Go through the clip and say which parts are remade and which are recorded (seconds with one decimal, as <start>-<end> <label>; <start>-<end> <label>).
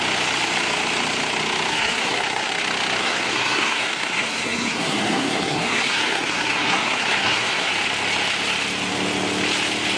0.0-1.7 recorded; 1.7-2.5 remade; 2.5-3.0 recorded; 3.0-7.7 remade; 7.7-10.0 recorded